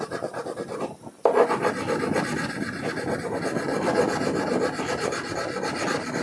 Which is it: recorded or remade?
recorded